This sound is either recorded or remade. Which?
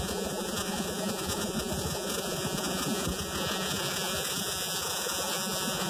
remade